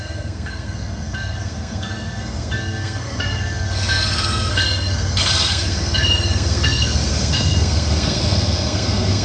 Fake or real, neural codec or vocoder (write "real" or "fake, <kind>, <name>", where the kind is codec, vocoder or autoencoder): fake, codec, SNAC